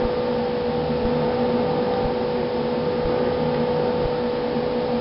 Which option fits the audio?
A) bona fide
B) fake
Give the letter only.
A